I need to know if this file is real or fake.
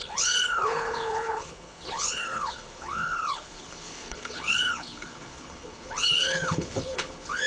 fake